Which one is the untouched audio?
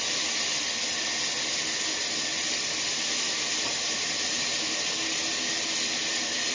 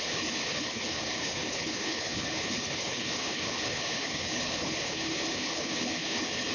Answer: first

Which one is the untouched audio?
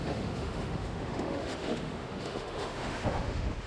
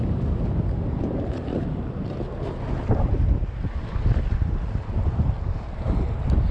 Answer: second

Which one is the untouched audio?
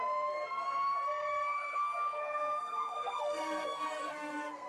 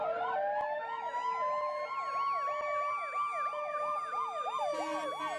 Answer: second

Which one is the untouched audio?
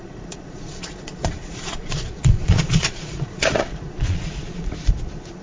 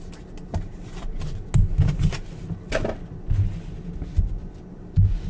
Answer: second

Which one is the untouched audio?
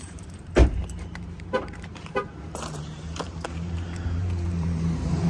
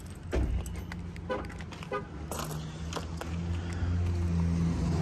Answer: second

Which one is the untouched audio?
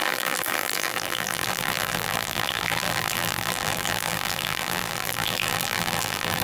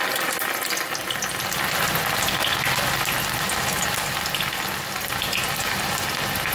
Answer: second